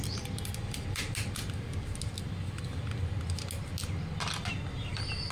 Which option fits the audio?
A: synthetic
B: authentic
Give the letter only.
B